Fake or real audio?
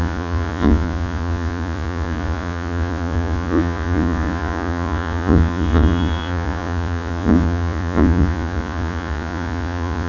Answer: fake